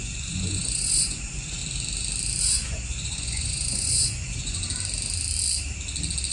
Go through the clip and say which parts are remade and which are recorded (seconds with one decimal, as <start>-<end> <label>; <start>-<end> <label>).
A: 0.0-1.6 remade; 1.6-2.4 recorded; 2.4-4.6 remade; 4.6-6.3 recorded